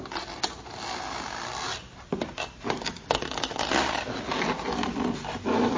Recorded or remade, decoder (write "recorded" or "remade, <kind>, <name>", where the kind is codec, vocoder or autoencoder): recorded